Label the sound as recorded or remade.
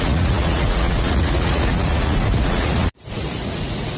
remade